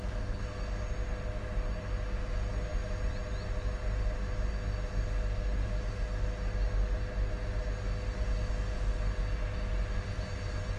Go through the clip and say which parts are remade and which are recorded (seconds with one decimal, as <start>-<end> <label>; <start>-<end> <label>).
0.0-10.8 recorded